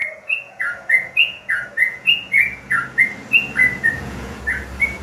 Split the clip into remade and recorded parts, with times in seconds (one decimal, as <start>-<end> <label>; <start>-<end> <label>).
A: 0.0-3.0 remade; 3.0-3.6 recorded; 3.6-4.4 remade; 4.4-5.0 recorded